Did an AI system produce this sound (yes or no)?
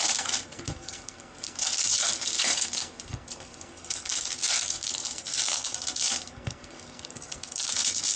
yes